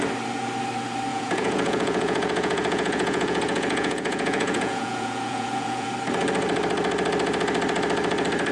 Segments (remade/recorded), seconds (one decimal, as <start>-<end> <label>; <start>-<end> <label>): 0.0-1.1 recorded; 1.1-5.9 remade; 5.9-8.5 recorded